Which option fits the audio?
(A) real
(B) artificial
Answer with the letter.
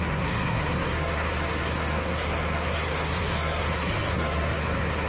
B